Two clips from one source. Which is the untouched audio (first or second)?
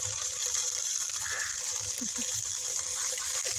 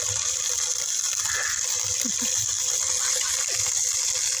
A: second